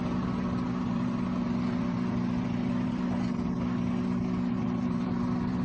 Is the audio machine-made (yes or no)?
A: no